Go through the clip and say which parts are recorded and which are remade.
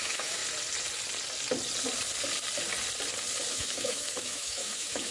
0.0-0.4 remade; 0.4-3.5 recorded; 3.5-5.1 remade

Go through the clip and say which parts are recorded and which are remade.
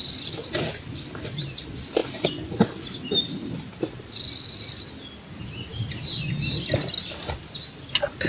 0.0-8.3 recorded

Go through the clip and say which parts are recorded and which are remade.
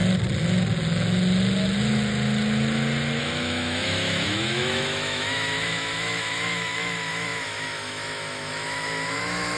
0.0-3.2 recorded; 3.2-9.6 remade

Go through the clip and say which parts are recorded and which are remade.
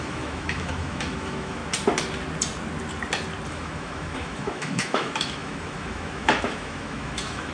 0.0-1.6 remade; 1.6-3.5 recorded; 3.5-7.5 remade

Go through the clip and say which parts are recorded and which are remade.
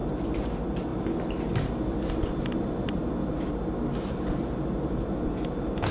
0.0-5.9 recorded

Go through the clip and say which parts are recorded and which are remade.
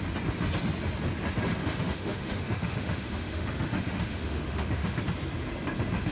0.0-1.6 recorded; 1.6-5.0 remade; 5.0-6.1 recorded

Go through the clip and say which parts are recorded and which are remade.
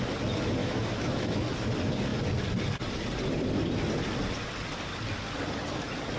0.0-0.6 recorded; 0.6-1.4 remade; 1.4-6.2 recorded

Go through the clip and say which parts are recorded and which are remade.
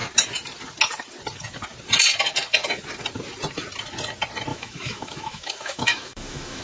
0.0-4.5 recorded; 4.5-6.6 remade